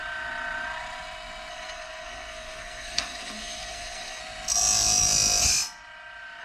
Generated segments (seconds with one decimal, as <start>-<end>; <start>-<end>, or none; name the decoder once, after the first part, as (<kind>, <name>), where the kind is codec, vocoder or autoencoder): 1.5-4.2 (codec, SNAC)